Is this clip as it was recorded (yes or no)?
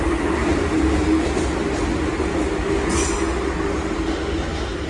yes